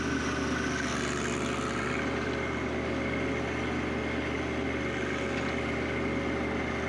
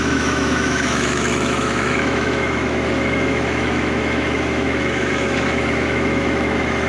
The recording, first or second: first